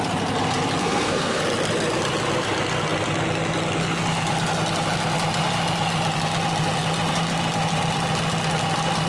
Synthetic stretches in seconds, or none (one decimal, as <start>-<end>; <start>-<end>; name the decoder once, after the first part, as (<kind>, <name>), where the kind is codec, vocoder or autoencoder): 0.8-1.4 (codec, SNAC)